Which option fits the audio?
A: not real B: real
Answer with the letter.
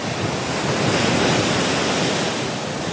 B